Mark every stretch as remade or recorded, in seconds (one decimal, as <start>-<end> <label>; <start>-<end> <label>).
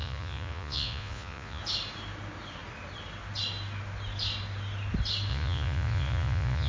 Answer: 0.0-1.6 remade; 1.6-5.3 recorded; 5.3-6.7 remade